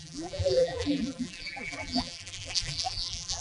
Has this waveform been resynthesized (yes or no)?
yes